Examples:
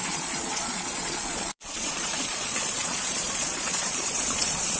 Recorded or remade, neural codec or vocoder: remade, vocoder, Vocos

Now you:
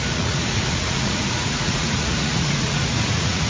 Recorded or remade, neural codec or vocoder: remade, vocoder, Vocos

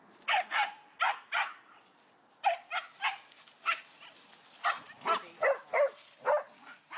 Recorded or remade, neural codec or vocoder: recorded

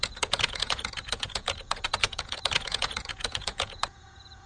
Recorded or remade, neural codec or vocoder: remade, vocoder, Vocos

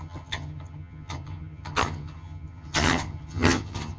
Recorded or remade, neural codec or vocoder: remade, vocoder, HiFi-GAN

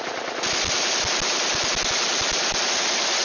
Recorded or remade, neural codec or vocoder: recorded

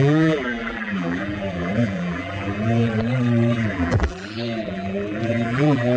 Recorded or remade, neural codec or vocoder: remade, vocoder, BigVGAN v2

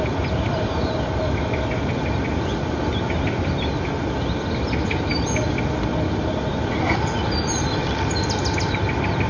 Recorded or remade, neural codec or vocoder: recorded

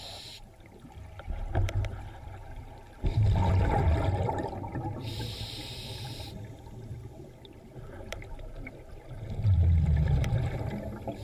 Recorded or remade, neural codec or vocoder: recorded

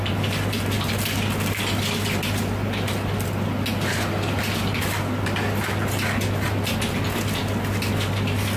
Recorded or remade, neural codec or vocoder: recorded